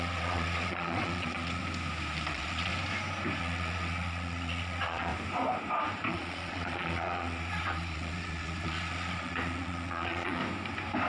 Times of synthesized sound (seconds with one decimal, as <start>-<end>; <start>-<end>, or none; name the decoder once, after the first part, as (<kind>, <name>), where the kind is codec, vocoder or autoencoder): 0.0-1.6 (vocoder, Vocos); 2.3-2.7; 3.4-5.1; 6.1-10.4